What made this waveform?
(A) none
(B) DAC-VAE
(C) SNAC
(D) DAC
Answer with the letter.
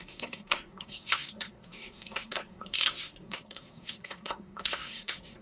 C